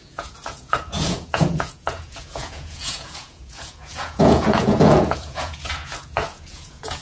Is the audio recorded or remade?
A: remade